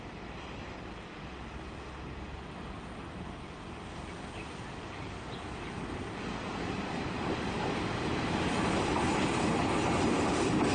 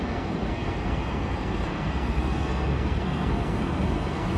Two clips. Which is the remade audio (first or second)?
second